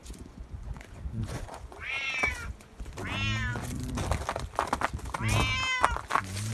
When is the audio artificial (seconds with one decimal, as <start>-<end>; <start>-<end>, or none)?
0.0-2.9